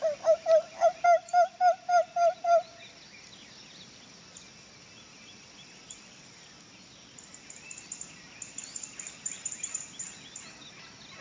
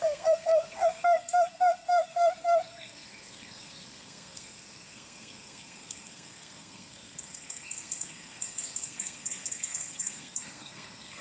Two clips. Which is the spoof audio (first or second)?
second